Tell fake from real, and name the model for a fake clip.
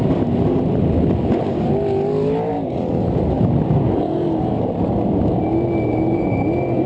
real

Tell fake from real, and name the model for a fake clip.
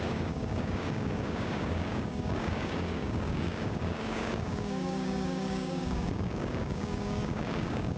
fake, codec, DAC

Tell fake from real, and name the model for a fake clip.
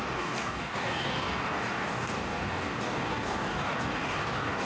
fake, codec, DAC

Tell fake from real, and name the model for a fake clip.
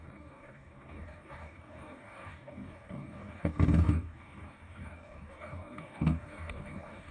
fake, codec, DAC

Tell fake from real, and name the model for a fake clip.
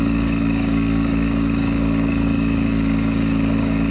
fake, codec, DAC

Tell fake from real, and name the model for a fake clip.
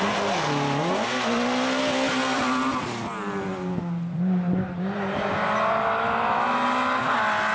real